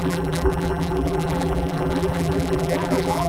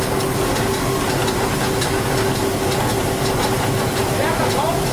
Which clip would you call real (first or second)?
second